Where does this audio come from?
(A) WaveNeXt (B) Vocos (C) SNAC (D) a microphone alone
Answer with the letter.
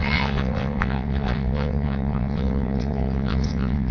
A